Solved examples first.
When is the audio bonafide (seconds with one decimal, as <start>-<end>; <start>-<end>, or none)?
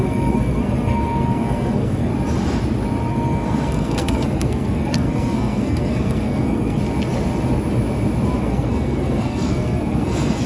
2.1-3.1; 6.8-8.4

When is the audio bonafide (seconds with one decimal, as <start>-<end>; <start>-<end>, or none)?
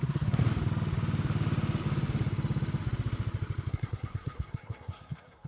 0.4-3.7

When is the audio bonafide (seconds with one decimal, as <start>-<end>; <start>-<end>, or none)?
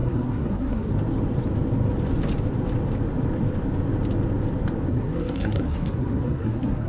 0.9-4.9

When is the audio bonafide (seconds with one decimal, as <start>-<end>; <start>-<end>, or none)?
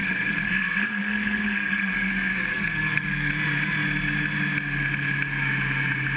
2.1-2.5; 3.3-6.2